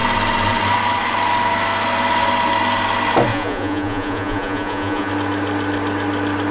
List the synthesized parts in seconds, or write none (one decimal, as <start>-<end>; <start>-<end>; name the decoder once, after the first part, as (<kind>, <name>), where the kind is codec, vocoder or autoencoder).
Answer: 3.3-5.1 (vocoder, Vocos)